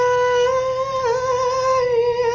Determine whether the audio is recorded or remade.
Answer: recorded